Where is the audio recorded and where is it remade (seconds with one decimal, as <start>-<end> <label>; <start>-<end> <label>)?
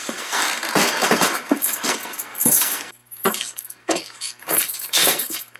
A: 0.0-5.6 remade